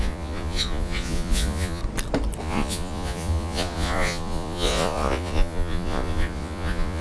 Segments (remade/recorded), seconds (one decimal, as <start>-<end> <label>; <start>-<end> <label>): 0.0-1.8 remade; 1.8-2.4 recorded; 2.4-7.0 remade